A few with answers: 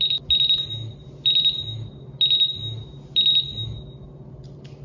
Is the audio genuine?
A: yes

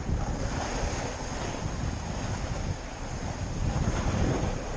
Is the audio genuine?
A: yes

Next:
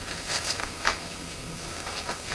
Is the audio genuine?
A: no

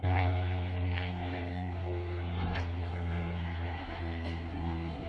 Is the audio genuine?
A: no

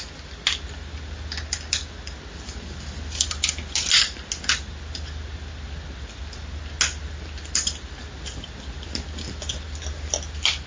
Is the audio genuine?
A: yes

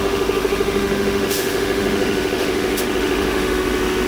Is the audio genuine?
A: no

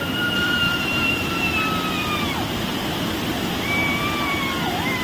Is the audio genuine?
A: yes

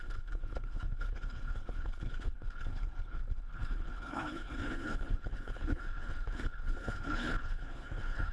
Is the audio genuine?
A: no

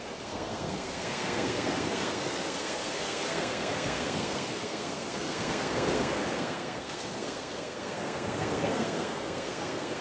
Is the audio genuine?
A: no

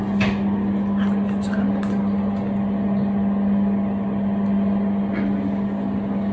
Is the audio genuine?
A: yes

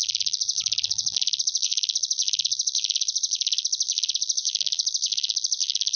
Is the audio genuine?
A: no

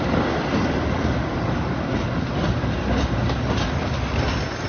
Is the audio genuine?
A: yes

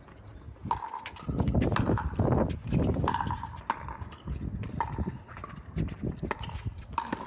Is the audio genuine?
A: yes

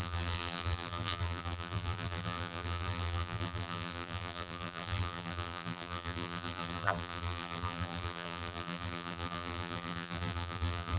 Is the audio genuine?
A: no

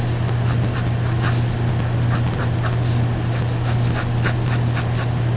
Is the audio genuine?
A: yes